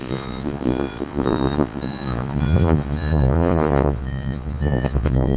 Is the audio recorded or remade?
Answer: remade